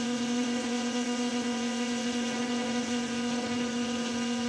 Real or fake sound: fake